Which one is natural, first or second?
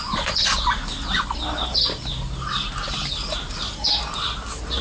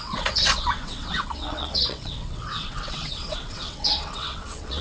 first